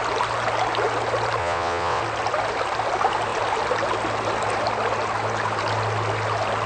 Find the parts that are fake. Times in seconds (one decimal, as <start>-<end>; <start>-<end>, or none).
1.4-2.0

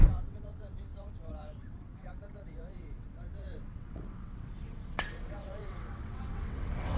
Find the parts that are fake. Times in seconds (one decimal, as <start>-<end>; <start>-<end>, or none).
0.0-7.0

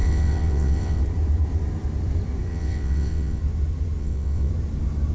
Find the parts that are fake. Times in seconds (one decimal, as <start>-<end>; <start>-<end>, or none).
0.0-1.0; 2.5-3.4; 4.0-4.5

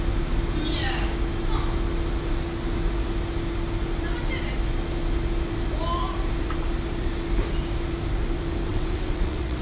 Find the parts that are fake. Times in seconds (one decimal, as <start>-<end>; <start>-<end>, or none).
8.7-9.6

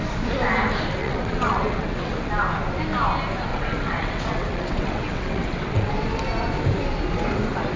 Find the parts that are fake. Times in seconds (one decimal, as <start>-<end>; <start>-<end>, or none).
1.0-2.3; 3.5-5.9